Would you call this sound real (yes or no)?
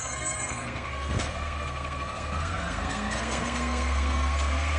no